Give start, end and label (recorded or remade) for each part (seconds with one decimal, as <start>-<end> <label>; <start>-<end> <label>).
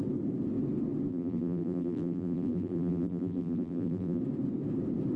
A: 0.0-1.1 recorded; 1.1-4.2 remade; 4.2-5.2 recorded